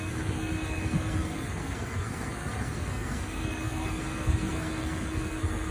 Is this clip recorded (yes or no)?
no